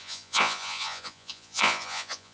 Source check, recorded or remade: remade